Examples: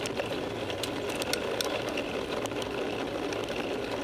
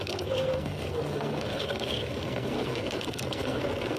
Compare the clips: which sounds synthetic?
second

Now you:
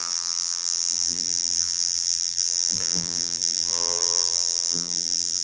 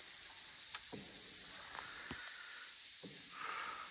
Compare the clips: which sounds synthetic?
first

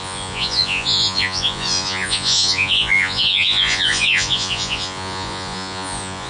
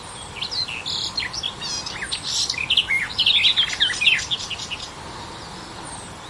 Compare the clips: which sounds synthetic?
first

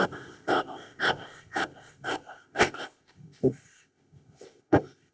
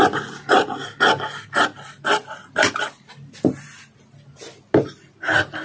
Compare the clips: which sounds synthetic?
first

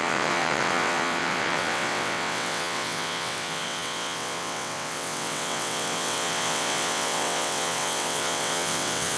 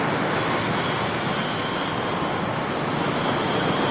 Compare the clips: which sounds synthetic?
first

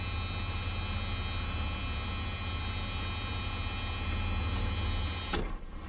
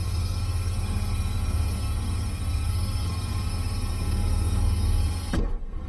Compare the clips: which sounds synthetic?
second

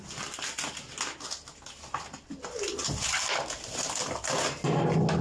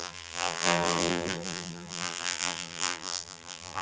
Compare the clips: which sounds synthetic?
second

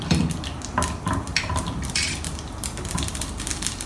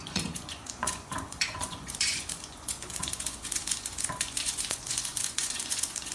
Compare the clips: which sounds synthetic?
second